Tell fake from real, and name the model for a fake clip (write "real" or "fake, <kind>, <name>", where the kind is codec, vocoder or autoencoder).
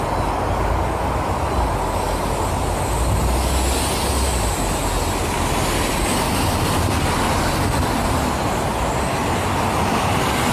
real